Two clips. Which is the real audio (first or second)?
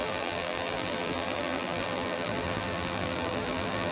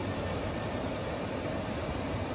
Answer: second